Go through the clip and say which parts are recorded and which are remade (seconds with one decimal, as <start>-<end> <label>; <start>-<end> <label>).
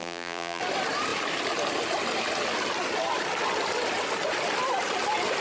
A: 0.0-0.6 remade; 0.6-5.4 recorded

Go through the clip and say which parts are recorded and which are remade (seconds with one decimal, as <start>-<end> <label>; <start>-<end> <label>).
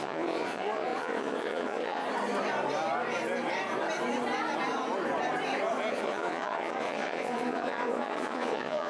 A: 0.0-2.0 remade; 2.0-5.9 recorded; 5.9-8.9 remade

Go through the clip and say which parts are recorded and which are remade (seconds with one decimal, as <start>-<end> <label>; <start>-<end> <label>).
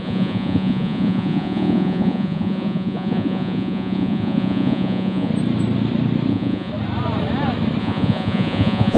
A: 0.0-5.3 remade; 5.3-6.3 recorded; 6.3-6.7 remade; 6.7-7.8 recorded; 7.8-9.0 remade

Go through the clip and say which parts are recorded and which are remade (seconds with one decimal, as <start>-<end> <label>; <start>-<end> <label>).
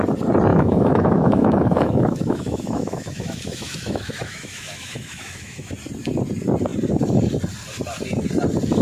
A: 0.0-0.5 recorded; 0.5-5.7 remade; 5.7-8.8 recorded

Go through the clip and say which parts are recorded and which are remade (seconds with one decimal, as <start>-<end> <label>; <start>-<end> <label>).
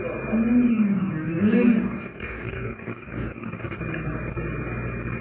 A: 0.0-0.7 recorded; 0.7-3.8 remade; 3.8-5.2 recorded